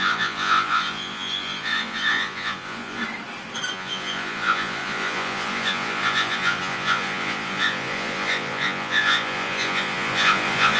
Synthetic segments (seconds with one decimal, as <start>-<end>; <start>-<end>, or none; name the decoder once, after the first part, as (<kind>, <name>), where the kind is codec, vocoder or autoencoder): 0.0-3.0 (vocoder, Vocos); 3.7-10.8